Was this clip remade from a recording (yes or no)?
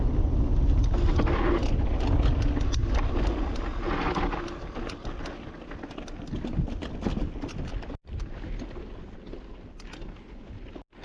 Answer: no